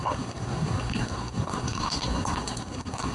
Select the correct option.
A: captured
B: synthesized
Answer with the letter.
B